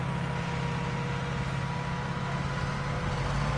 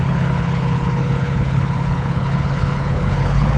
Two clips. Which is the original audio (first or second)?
first